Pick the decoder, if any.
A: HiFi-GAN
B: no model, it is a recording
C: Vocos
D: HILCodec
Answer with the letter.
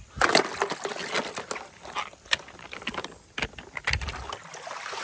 B